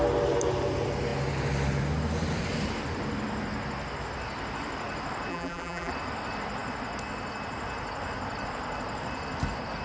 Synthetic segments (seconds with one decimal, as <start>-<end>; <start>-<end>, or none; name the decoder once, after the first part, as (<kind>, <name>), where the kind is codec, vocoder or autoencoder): 5.3-5.9 (vocoder, BigVGAN v2)